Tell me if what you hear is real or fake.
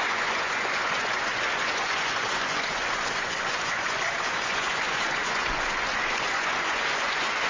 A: fake